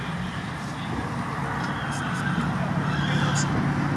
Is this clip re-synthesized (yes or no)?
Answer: no